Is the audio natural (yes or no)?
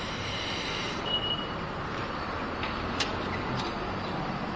yes